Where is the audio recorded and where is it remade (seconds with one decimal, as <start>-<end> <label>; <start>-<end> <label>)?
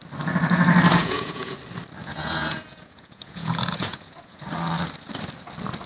0.0-1.0 recorded; 1.0-1.6 remade; 1.6-2.0 recorded; 2.0-4.4 remade; 4.4-5.9 recorded